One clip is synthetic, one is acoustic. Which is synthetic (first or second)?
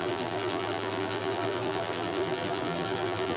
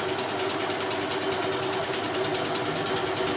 first